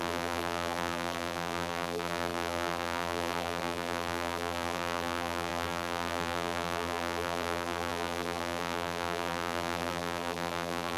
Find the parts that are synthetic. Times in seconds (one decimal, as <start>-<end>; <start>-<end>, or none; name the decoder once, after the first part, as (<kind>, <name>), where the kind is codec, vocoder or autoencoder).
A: 0.0-11.0 (vocoder, BigVGAN v2)